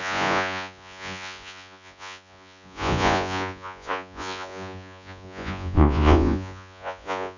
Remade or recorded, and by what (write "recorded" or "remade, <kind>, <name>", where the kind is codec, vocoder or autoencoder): remade, vocoder, Vocos